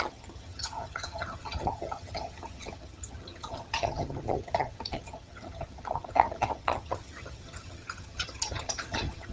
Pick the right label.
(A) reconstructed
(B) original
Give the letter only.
A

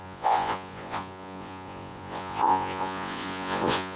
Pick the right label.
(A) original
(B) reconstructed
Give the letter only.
B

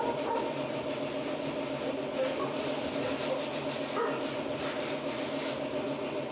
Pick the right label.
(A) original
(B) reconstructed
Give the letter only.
A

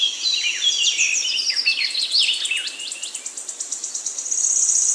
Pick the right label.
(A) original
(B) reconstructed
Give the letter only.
A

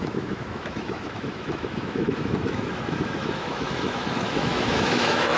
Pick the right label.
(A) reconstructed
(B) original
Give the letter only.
A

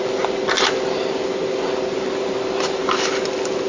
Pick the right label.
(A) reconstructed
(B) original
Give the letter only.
B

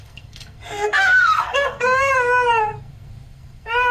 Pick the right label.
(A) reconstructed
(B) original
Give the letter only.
A